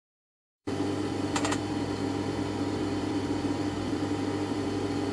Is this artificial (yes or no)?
yes